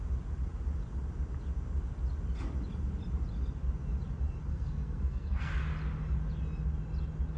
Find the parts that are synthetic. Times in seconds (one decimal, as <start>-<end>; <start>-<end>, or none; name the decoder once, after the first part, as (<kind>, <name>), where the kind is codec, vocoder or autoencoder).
4.5-5.5 (codec, SNAC)